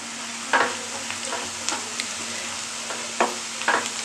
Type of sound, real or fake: real